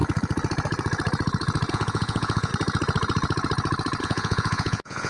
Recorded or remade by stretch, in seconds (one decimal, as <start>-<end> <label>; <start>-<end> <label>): 0.0-1.7 recorded; 1.7-2.5 remade; 2.5-4.0 recorded; 4.0-5.1 remade